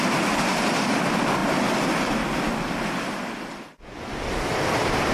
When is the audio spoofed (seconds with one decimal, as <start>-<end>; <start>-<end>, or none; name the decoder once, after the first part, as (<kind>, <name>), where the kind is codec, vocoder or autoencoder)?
none